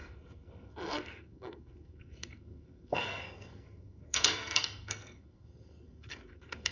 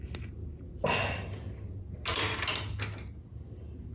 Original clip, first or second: second